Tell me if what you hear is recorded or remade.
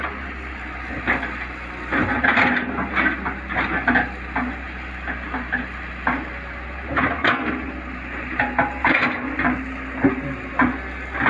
recorded